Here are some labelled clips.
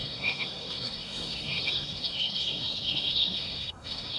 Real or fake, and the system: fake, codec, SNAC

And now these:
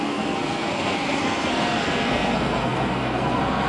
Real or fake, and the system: fake, codec, SNAC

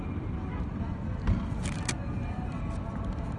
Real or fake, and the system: real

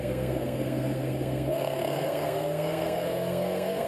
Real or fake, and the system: fake, codec, SNAC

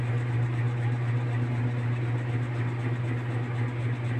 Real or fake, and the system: real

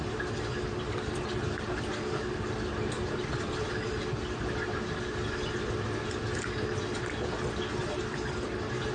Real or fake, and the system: real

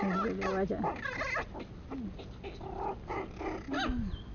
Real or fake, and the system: real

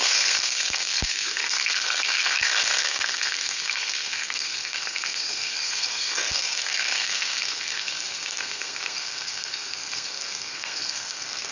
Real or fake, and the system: fake, codec, SNAC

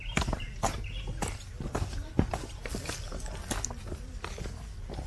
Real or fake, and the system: real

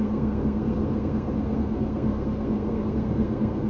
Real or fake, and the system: fake, codec, SNAC